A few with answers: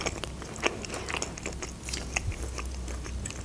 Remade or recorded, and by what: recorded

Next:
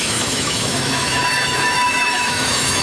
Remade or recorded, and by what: remade, autoencoder, DAC-VAE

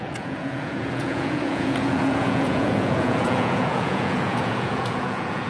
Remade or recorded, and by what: remade, vocoder, Vocos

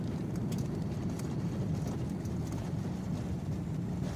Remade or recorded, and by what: recorded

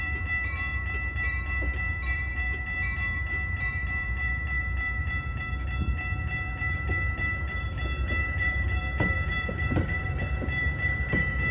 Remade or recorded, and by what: remade, vocoder, BigVGAN v2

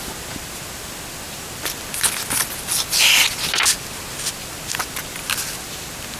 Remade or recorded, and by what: recorded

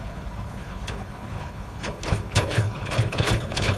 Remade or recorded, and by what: remade, codec, HILCodec